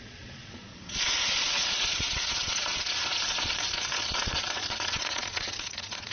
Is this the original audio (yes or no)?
no